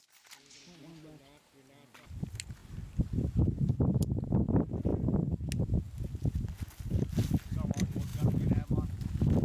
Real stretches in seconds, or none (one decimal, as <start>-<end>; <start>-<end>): 0.0-9.4